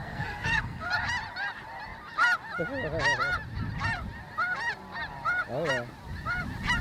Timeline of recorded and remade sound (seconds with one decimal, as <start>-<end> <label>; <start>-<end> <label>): 0.0-0.9 remade; 0.9-6.8 recorded